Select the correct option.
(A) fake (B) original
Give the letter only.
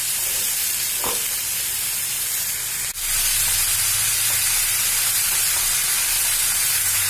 B